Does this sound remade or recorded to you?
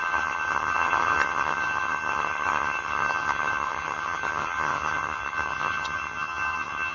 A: remade